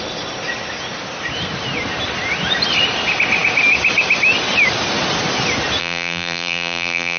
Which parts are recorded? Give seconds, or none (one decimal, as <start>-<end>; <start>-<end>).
0.0-5.8

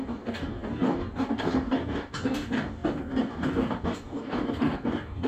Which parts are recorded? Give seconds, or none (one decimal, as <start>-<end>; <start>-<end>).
none

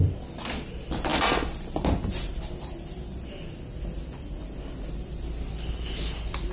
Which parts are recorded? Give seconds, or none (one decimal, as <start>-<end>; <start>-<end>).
0.0-6.5

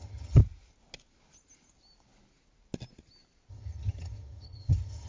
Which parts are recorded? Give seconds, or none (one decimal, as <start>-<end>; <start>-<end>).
0.4-3.5

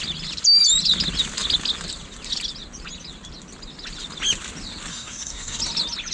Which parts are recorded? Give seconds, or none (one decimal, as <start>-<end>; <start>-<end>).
0.0-4.9; 5.6-6.1

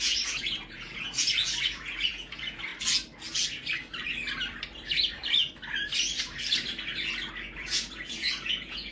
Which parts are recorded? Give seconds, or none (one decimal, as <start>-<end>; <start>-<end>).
2.7-7.6

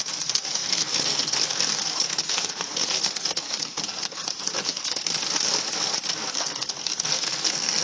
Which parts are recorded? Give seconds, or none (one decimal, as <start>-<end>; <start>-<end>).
5.1-6.3